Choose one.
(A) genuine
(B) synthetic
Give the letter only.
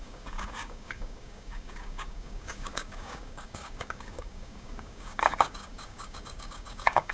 B